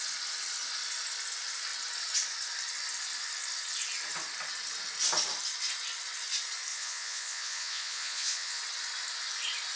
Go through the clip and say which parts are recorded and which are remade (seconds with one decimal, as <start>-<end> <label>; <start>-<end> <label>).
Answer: 0.0-6.7 recorded; 6.7-8.6 remade; 8.6-9.8 recorded

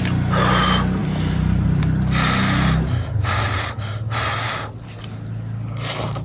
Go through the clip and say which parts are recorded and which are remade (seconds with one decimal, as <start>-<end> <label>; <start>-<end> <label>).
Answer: 0.0-1.0 recorded; 1.0-1.8 remade; 1.8-6.2 recorded

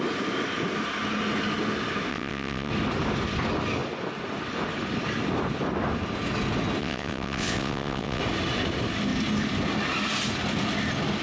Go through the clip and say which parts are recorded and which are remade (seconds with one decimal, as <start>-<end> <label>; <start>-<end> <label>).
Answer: 0.0-2.1 recorded; 2.1-2.7 remade; 2.7-6.8 recorded; 6.8-8.2 remade; 8.2-11.2 recorded

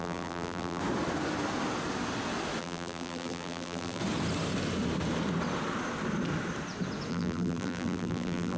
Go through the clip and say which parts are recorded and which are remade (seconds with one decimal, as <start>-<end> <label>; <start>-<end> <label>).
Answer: 0.0-0.8 remade; 0.8-2.6 recorded; 2.6-4.0 remade; 4.0-7.1 recorded; 7.1-8.6 remade

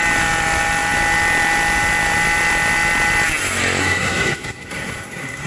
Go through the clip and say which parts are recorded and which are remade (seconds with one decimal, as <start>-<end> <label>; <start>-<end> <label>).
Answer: 0.0-3.8 recorded; 3.8-5.5 remade

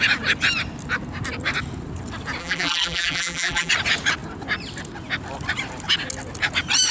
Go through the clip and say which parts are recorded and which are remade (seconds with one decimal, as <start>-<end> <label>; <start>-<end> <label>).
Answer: 0.0-2.4 recorded; 2.4-3.7 remade; 3.7-6.9 recorded

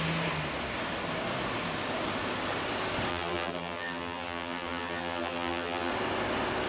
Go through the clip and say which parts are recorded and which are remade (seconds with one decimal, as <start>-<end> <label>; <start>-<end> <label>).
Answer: 0.0-3.1 recorded; 3.1-5.9 remade; 5.9-6.7 recorded